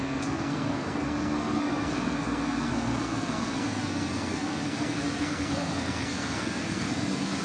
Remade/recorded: remade